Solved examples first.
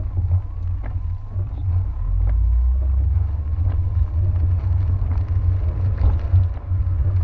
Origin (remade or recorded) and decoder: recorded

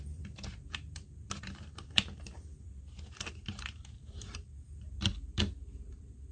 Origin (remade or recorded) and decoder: remade, vocoder, BigVGAN v2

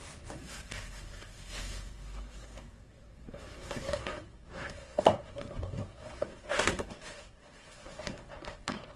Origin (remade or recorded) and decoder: remade, codec, SNAC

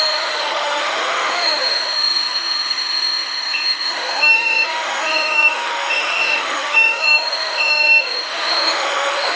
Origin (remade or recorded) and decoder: remade, autoencoder, DAC-VAE